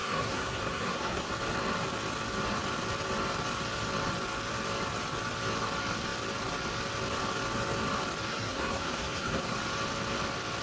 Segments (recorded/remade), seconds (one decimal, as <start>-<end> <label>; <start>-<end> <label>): 0.0-1.3 remade; 1.3-8.3 recorded; 8.3-9.5 remade; 9.5-10.6 recorded